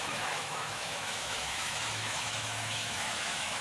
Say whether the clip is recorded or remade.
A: remade